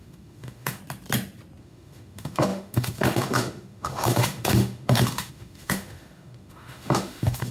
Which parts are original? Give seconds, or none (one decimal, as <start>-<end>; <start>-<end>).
0.8-1.6